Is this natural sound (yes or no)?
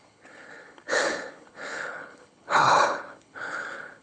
no